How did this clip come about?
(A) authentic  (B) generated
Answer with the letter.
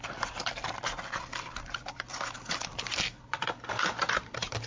B